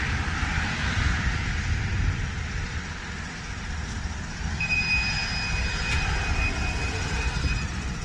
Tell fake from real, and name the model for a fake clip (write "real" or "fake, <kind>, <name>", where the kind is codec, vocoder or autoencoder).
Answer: real